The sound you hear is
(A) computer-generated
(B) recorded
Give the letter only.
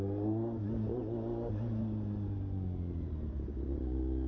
B